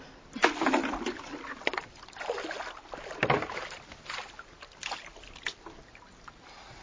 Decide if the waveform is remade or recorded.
recorded